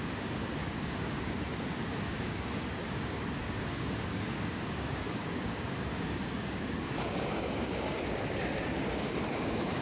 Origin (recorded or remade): remade